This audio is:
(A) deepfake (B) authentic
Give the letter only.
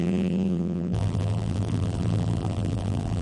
A